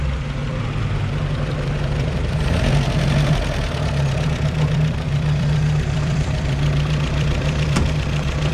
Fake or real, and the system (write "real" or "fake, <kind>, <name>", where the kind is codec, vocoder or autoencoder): fake, vocoder, BigVGAN v2